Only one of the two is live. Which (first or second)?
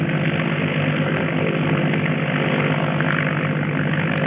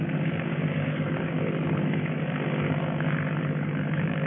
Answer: first